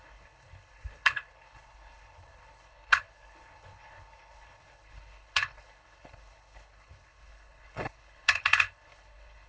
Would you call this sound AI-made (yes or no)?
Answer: yes